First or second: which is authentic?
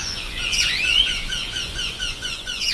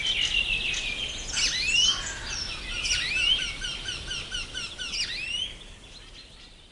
second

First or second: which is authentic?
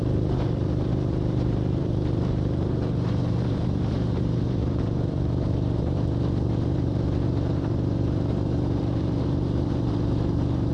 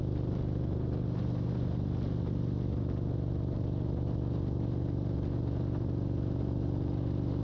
second